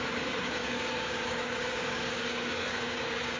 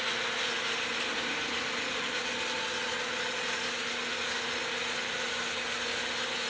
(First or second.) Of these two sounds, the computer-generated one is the first